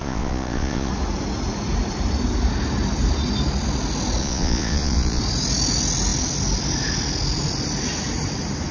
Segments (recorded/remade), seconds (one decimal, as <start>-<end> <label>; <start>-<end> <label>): 0.0-0.9 remade; 0.9-4.2 recorded; 4.2-5.2 remade; 5.2-8.7 recorded

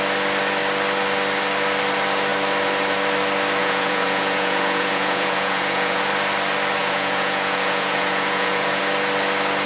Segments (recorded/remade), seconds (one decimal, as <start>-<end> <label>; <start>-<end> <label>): 0.0-3.6 recorded; 3.6-6.0 remade; 6.0-6.8 recorded; 6.8-8.8 remade; 8.8-9.7 recorded

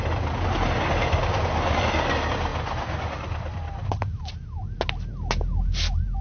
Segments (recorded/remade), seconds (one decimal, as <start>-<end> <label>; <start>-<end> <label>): 0.0-6.2 recorded

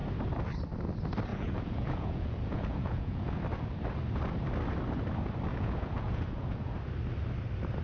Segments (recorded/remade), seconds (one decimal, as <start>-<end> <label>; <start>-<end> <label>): 0.0-1.3 recorded; 1.3-3.4 remade; 3.4-5.5 recorded; 5.5-6.9 remade; 6.9-7.8 recorded

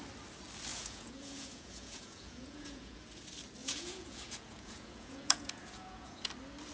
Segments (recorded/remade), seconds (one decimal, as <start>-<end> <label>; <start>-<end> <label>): 0.0-0.7 recorded; 0.7-3.0 remade; 3.0-3.6 recorded; 3.6-6.3 remade; 6.3-6.7 recorded